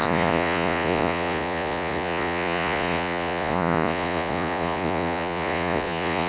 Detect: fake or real fake